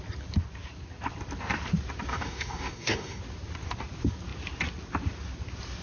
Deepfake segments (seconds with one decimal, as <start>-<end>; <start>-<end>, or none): 2.1-3.2